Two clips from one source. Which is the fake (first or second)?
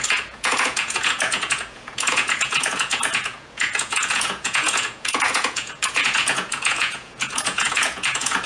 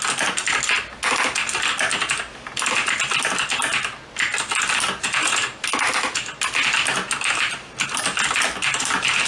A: first